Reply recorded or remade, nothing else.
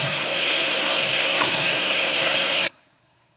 remade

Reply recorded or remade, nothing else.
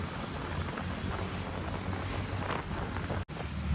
recorded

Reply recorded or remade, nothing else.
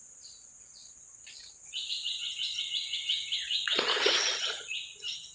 remade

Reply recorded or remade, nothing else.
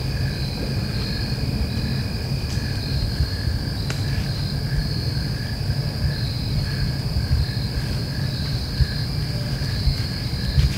recorded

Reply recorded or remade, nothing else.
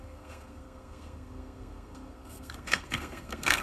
remade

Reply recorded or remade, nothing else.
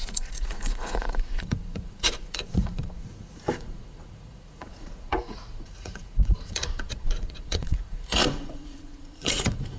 remade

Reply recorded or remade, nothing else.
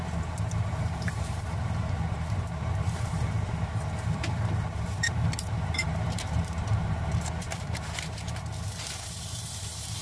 remade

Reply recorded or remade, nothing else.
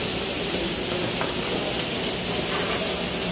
recorded